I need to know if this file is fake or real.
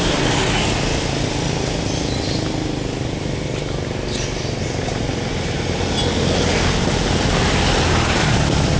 real